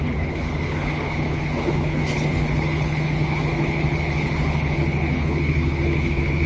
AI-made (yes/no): yes